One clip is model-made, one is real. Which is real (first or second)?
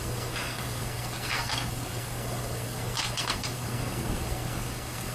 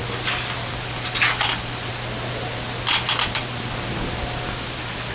second